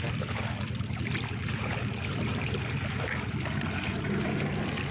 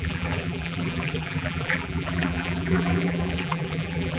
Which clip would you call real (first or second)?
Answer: first